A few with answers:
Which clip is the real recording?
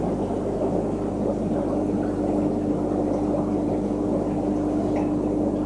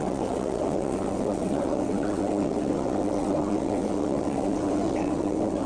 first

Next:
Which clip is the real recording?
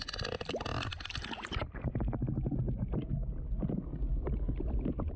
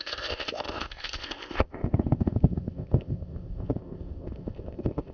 first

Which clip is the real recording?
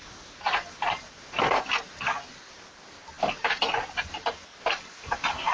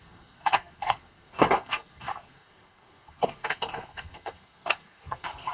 first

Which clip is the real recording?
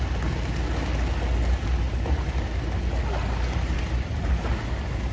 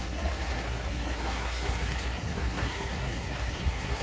first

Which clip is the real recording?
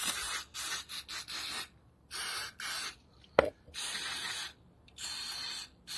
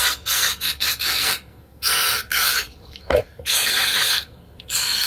first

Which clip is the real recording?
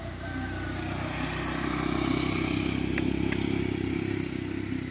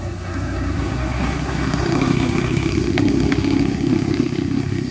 first